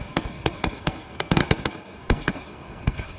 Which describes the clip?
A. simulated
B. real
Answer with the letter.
A